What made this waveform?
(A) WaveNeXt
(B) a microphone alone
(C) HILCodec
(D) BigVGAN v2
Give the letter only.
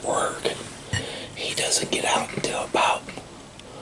B